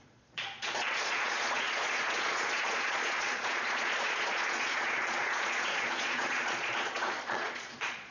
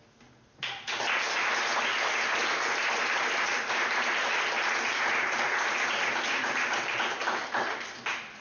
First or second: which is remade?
first